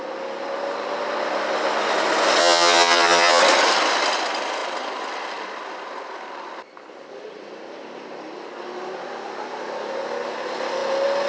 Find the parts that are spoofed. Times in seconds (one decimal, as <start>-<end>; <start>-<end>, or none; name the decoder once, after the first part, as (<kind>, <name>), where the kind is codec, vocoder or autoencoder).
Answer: 2.4-3.4 (vocoder, HiFi-GAN)